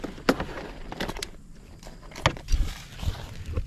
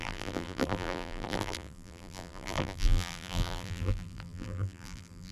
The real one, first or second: first